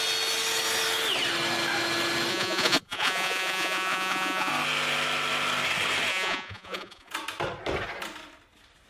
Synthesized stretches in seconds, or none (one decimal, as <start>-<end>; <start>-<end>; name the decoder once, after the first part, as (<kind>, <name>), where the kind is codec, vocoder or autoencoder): 2.3-4.5 (vocoder, Vocos); 6.1-7.1